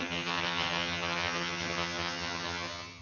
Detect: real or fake fake